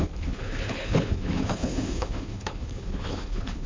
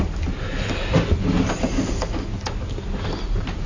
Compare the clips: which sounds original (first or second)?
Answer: second